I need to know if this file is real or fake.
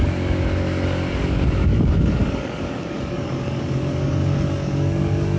fake